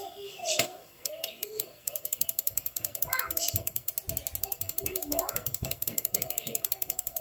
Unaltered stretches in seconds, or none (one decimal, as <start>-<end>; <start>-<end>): 3.9-4.4